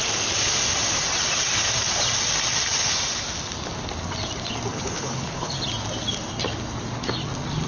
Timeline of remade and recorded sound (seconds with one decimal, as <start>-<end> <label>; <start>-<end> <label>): 0.0-4.7 recorded; 4.7-5.5 remade; 5.5-7.7 recorded